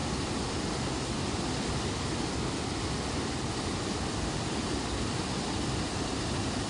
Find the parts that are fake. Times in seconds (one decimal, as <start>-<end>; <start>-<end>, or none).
none